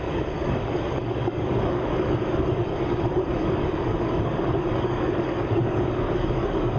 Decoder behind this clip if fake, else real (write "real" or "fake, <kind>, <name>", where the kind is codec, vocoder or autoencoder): fake, codec, DAC